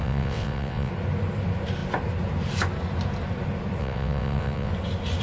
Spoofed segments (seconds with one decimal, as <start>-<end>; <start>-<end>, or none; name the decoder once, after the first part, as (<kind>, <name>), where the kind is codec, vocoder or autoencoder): 0.0-0.9 (vocoder, WaveNeXt); 3.8-4.7